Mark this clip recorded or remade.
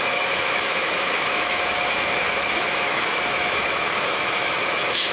remade